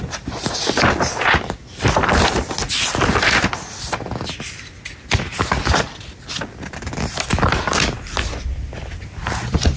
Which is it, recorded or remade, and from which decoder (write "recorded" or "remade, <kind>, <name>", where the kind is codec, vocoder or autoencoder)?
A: recorded